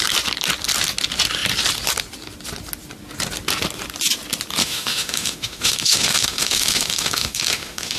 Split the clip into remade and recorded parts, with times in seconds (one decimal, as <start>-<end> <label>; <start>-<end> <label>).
0.0-4.6 recorded; 4.6-8.0 remade